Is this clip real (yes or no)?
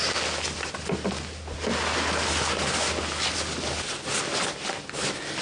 yes